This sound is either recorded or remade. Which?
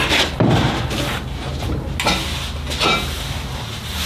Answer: recorded